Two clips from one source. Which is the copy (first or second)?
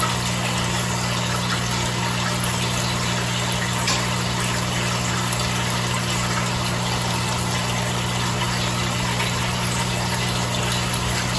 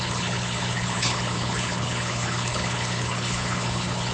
second